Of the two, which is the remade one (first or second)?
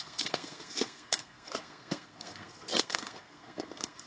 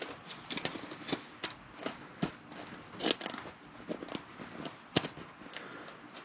first